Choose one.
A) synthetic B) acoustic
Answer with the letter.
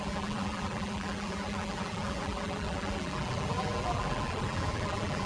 A